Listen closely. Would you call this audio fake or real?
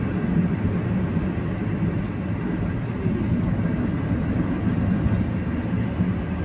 real